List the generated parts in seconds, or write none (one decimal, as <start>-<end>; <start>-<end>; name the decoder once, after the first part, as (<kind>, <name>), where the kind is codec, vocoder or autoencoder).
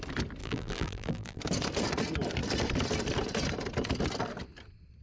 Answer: 0.4-1.4 (vocoder, BigVGAN v2)